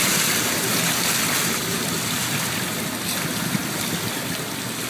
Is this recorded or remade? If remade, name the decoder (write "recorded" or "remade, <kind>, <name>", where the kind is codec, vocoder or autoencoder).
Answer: remade, vocoder, BigVGAN v2